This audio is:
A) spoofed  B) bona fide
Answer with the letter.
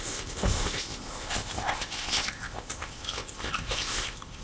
A